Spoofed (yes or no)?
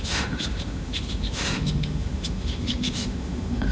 yes